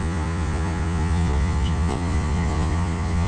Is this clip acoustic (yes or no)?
no